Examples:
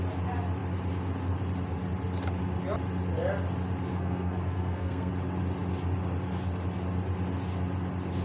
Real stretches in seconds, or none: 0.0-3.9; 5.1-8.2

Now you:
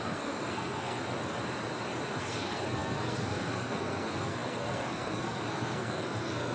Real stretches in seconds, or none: 1.0-2.2

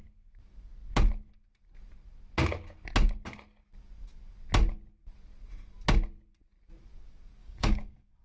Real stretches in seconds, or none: 0.0-7.4

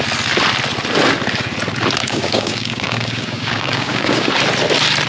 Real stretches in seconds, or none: 0.0-2.0; 4.3-5.1